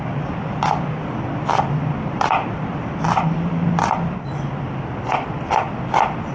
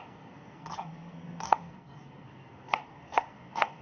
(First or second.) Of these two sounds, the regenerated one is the second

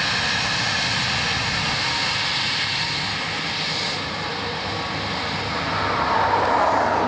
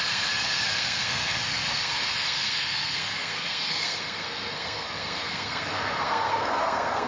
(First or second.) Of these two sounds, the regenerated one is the second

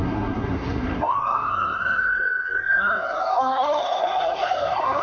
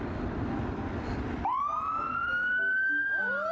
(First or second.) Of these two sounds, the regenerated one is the first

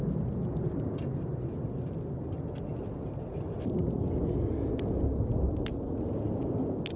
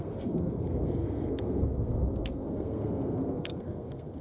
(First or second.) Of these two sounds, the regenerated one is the second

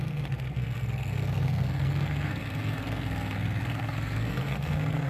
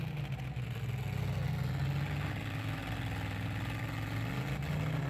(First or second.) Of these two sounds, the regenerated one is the first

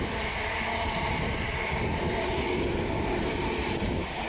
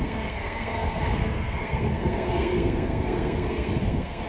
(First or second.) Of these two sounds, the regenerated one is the second